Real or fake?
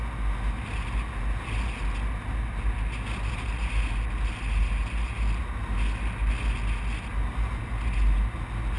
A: real